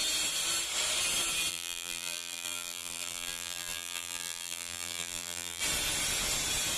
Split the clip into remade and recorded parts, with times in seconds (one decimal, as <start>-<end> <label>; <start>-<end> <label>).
0.0-1.5 recorded; 1.5-5.6 remade; 5.6-6.8 recorded